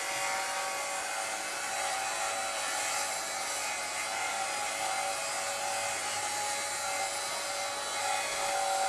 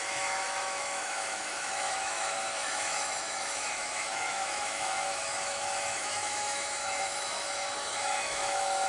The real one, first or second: first